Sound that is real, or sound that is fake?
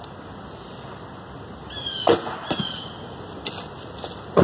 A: real